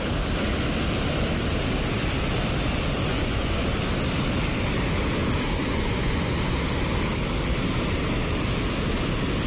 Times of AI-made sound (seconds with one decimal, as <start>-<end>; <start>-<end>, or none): 3.1-3.6; 5.7-6.3